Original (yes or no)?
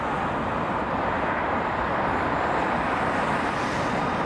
yes